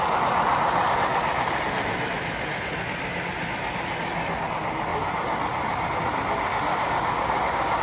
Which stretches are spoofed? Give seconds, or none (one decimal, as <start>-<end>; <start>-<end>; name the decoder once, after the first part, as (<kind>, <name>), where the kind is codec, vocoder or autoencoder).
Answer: 6.7-7.8 (codec, DAC)